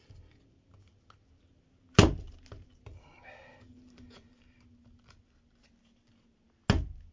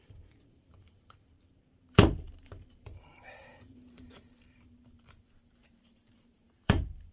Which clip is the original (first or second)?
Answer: first